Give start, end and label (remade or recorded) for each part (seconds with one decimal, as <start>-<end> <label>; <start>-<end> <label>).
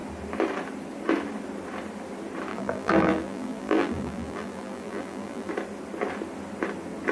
0.0-2.5 recorded; 2.5-5.5 remade; 5.5-7.1 recorded